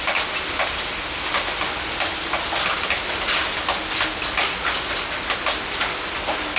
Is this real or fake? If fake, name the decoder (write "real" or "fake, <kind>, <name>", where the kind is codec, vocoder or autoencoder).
real